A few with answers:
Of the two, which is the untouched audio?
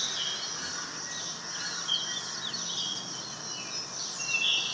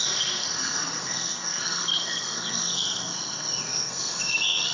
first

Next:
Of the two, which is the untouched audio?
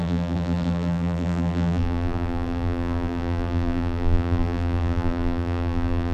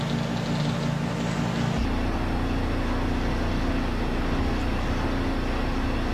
second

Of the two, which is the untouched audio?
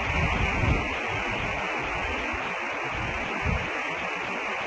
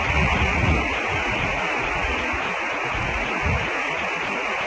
first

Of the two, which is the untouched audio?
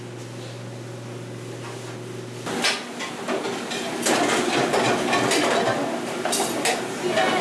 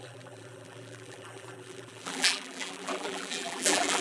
first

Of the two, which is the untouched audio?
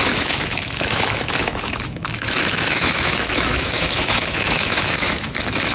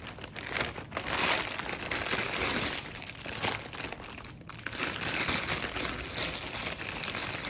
second